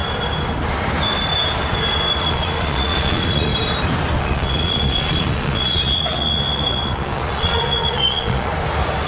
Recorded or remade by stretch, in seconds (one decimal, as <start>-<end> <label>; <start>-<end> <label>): 0.0-2.2 recorded; 2.2-3.5 remade; 3.5-4.2 recorded; 4.2-8.5 remade; 8.5-9.1 recorded